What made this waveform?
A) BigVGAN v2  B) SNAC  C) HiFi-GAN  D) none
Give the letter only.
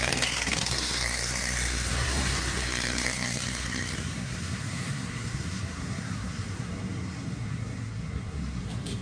B